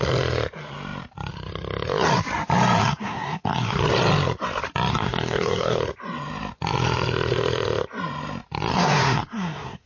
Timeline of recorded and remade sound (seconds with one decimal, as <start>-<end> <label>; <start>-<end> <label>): 0.0-2.8 recorded; 2.8-3.8 remade; 3.8-4.9 recorded; 4.9-5.8 remade; 5.8-8.7 recorded; 8.7-9.9 remade